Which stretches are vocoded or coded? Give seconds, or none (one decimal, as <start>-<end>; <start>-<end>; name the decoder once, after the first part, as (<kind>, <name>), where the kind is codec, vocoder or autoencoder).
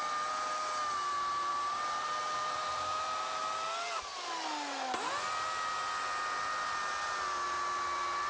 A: 1.5-3.4 (vocoder, BigVGAN v2)